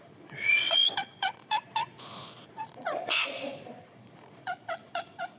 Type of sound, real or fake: fake